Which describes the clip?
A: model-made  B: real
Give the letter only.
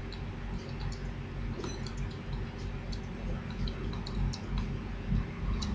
B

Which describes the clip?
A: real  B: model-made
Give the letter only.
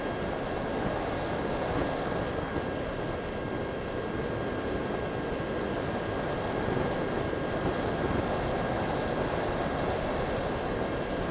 A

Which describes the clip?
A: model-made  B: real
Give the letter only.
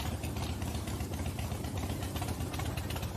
B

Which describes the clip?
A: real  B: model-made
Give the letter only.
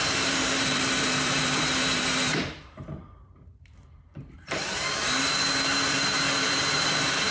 B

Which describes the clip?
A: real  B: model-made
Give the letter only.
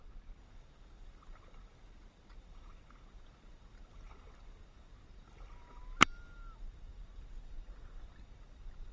B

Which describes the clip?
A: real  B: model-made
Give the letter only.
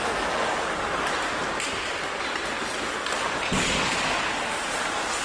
A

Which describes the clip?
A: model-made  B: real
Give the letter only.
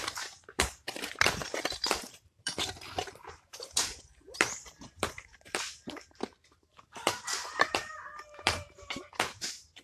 A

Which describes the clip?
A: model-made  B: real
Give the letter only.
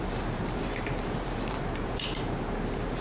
A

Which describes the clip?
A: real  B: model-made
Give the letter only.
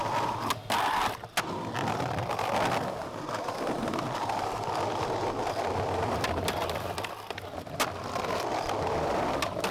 A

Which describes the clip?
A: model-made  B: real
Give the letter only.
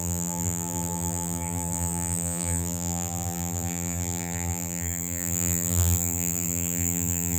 A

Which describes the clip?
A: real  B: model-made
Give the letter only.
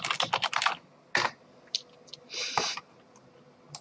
A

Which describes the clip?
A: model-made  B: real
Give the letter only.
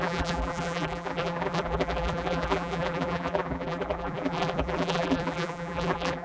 A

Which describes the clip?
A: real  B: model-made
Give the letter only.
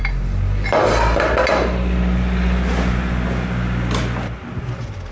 A